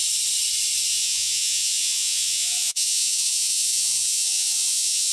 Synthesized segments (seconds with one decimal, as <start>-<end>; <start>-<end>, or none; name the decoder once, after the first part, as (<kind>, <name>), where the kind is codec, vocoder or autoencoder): 0.9-5.1 (vocoder, Vocos)